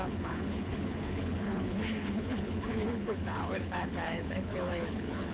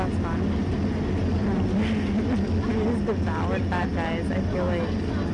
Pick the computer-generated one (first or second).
first